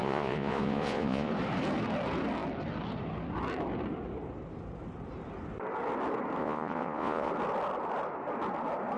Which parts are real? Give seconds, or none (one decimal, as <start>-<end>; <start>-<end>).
1.3-6.4; 7.3-9.0